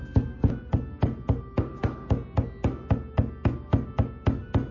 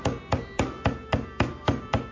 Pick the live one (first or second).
first